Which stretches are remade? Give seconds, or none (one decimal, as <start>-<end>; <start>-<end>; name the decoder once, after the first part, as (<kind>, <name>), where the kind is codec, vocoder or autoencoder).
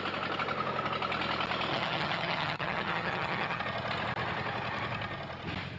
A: 1.7-3.6 (vocoder, HiFi-GAN)